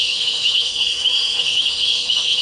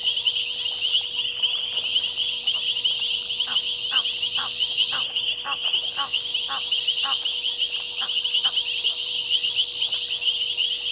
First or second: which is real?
second